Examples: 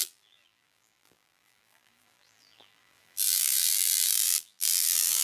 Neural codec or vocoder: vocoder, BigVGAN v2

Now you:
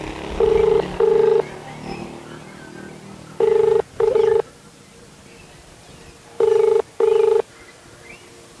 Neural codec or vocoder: none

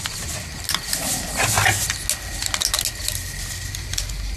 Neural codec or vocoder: none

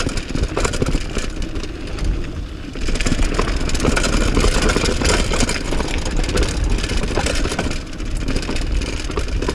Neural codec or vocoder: none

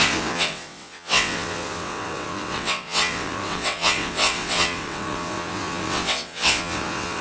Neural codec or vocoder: vocoder, WaveNeXt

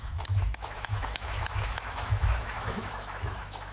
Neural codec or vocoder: autoencoder, DAC-VAE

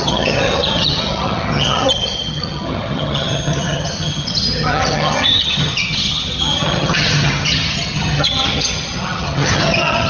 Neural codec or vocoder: vocoder, HiFi-GAN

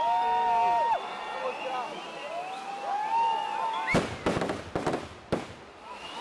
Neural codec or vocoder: none